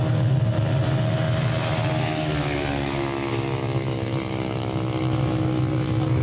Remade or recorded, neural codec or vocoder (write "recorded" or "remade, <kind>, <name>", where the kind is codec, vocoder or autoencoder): recorded